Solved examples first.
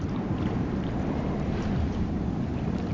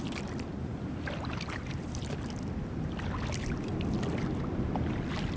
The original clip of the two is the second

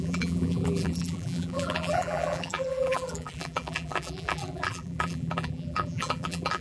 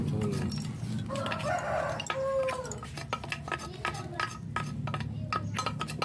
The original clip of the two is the second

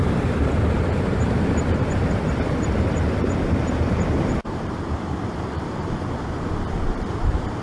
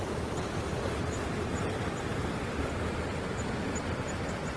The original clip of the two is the second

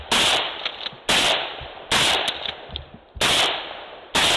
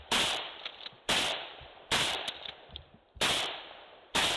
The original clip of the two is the first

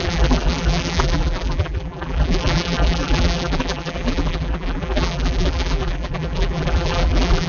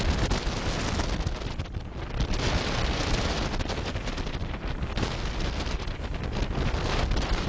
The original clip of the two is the second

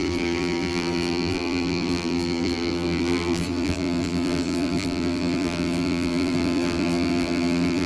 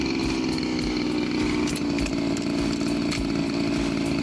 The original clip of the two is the second